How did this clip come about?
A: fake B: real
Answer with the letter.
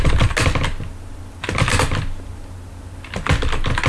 B